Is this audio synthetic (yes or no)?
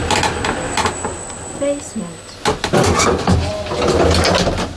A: no